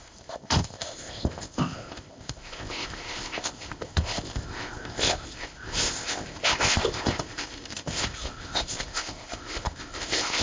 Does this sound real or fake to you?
fake